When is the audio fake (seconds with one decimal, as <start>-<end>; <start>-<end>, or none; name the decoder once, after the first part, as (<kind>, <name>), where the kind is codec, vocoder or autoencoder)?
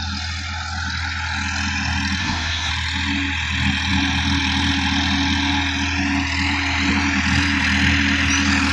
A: 2.2-2.7 (codec, SNAC)